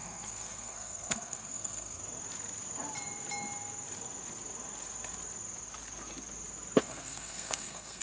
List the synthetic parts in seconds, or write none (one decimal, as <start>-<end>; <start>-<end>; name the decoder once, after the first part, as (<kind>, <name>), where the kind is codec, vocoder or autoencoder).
0.0-2.0 (codec, SNAC); 6.8-8.0